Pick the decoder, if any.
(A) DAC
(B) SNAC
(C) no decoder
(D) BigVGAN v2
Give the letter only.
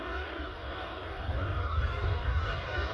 A